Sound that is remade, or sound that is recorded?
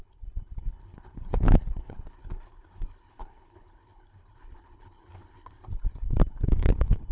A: remade